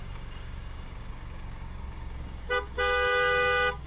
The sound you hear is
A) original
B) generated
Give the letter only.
B